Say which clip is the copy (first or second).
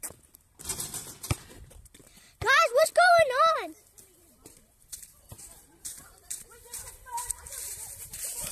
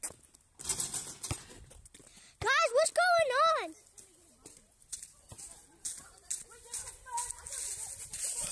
first